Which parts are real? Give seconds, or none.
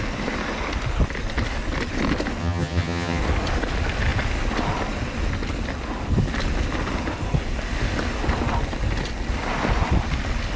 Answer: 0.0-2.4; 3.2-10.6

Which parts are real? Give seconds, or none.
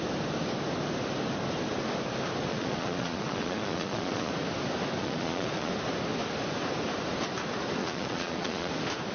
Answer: 0.0-2.5; 4.3-5.0; 5.7-7.8; 8.7-9.1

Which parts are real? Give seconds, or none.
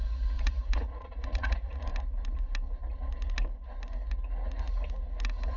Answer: 1.9-5.6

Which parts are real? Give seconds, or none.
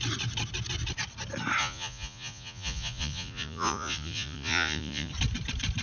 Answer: 0.0-1.6; 5.1-5.8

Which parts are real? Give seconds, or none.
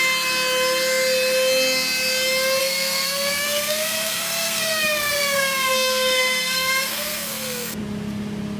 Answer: 0.0-2.6; 7.8-8.6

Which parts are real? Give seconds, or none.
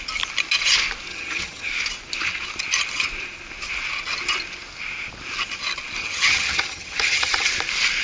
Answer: 0.0-1.1; 1.7-6.0; 7.5-8.0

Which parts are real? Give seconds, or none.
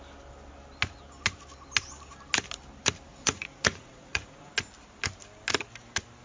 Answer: 0.0-3.1; 4.5-6.2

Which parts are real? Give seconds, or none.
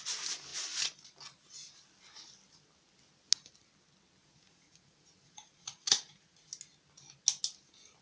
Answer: 0.0-4.2; 6.5-8.0